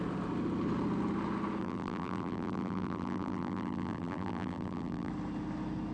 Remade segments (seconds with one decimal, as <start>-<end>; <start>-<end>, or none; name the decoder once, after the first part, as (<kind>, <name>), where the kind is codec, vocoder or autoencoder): 1.6-5.1 (vocoder, BigVGAN v2)

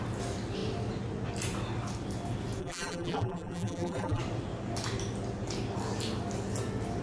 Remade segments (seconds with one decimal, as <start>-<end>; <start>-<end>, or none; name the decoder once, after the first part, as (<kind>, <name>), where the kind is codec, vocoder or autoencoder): 2.6-4.2 (vocoder, BigVGAN v2)

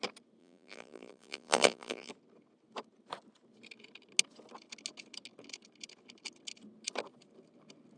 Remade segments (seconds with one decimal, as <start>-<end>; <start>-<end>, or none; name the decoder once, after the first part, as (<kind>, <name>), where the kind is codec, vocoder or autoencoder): 0.4-2.1 (vocoder, BigVGAN v2)

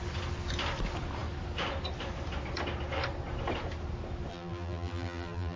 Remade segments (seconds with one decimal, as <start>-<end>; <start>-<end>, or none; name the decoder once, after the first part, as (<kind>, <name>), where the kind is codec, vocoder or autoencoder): 4.3-5.6 (vocoder, BigVGAN v2)